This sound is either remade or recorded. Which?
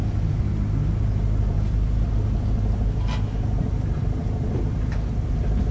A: recorded